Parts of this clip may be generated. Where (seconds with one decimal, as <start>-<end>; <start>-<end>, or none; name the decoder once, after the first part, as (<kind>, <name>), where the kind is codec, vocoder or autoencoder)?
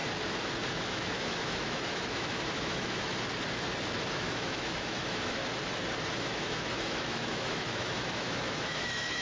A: 0.7-3.1 (autoencoder, DAC-VAE); 4.1-5.4; 6.1-9.2